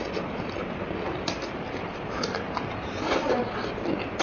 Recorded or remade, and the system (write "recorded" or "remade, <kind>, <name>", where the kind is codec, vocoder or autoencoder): recorded